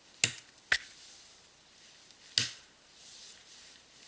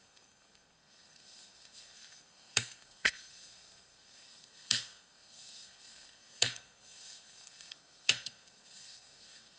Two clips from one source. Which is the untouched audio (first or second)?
first